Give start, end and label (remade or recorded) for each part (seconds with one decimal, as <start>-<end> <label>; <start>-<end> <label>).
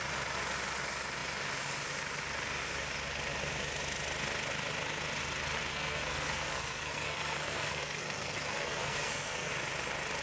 0.0-5.7 recorded; 5.7-9.5 remade; 9.5-10.2 recorded